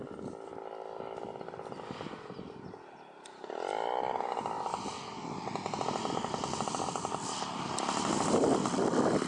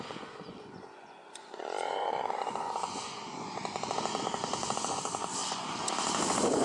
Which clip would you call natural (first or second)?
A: first